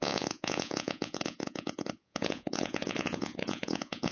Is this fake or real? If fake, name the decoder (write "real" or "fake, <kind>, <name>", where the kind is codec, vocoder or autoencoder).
fake, vocoder, Vocos